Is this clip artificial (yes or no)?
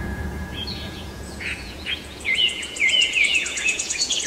yes